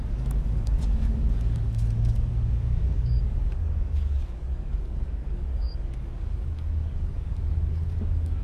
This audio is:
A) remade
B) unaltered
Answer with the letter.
A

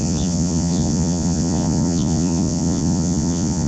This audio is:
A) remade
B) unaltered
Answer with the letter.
A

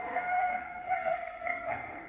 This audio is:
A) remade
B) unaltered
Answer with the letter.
A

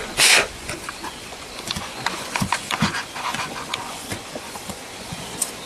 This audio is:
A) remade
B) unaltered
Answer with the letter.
A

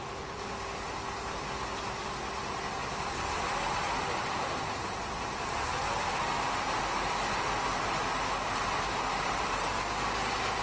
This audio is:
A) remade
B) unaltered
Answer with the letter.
B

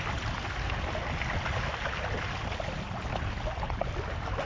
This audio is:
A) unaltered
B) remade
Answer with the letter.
A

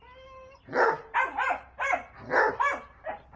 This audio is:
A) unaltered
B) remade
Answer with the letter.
A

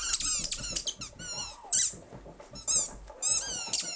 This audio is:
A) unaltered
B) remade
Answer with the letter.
A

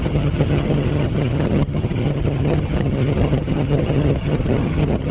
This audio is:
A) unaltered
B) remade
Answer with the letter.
B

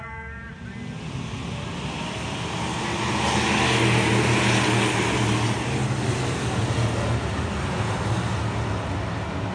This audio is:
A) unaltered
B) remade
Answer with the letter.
A